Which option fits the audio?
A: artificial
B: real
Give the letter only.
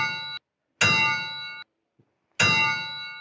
B